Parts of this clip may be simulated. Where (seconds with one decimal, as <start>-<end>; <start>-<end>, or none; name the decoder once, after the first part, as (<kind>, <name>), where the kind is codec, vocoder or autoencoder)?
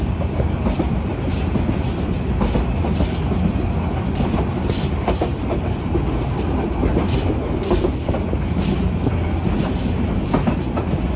none